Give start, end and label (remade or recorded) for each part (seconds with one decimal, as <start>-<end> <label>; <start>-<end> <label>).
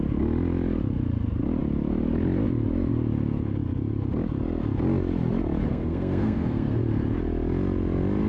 0.0-5.7 recorded; 5.7-6.8 remade; 6.8-8.3 recorded